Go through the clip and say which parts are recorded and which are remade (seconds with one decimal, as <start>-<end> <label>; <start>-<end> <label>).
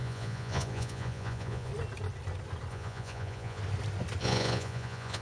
0.0-1.7 remade; 1.7-2.7 recorded; 2.7-3.6 remade; 3.6-4.2 recorded; 4.2-5.2 remade